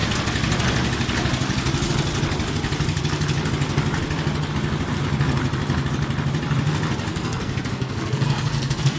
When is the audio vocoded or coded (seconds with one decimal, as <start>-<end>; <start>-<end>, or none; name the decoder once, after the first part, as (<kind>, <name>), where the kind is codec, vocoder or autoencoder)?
7.1-9.0 (codec, SNAC)